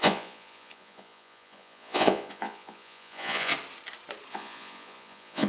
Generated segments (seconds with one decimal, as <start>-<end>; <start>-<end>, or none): 0.0-3.5; 4.3-5.5